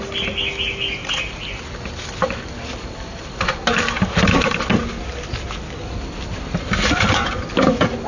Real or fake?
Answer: real